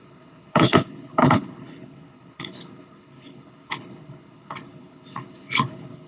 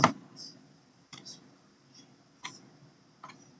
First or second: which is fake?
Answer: first